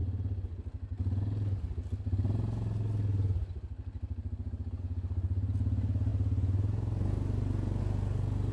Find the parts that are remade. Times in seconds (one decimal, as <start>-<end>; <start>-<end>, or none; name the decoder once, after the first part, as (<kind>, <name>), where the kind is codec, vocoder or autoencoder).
none